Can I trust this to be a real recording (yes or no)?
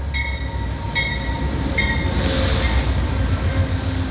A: yes